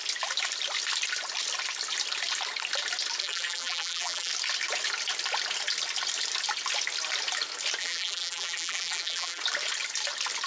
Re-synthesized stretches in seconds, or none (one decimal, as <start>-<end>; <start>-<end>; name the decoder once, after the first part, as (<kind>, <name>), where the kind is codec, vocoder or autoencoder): 3.2-4.3 (vocoder, BigVGAN v2); 7.8-9.4